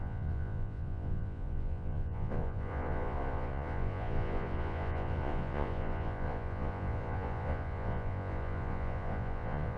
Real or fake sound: fake